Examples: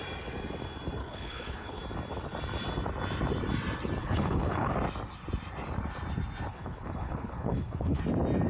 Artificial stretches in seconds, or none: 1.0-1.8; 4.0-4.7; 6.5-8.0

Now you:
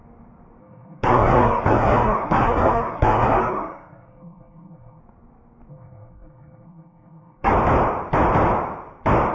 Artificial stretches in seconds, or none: 0.6-5.0; 5.7-7.5

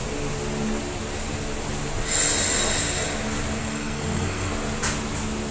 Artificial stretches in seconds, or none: 3.6-4.5

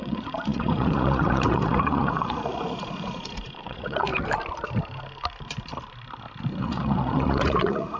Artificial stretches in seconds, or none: 0.0-4.1; 6.6-8.0

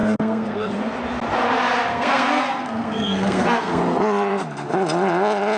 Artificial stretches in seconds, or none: 0.0-0.9; 1.9-3.8

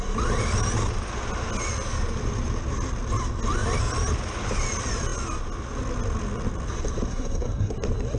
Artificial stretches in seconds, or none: 7.1-7.7